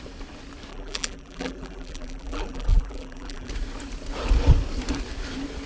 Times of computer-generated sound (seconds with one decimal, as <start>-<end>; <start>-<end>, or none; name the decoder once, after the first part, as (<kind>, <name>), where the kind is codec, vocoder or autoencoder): 0.7-3.5 (vocoder, BigVGAN v2)